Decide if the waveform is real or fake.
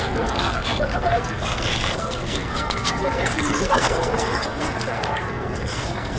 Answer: fake